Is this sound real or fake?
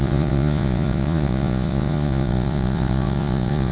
fake